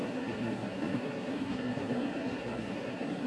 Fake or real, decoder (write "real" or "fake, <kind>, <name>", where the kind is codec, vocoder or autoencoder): fake, codec, SNAC